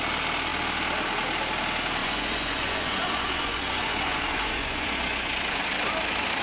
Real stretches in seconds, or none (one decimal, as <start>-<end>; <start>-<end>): 0.0-2.0; 5.6-6.4